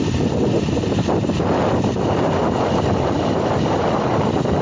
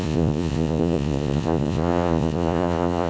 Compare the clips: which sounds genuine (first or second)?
first